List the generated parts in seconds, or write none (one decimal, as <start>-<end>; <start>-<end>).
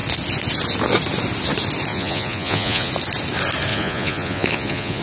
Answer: 1.9-2.9; 3.7-5.0